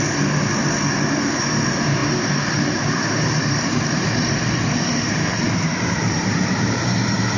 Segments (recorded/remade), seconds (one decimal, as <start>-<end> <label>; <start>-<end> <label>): 0.0-1.2 recorded; 1.2-7.4 remade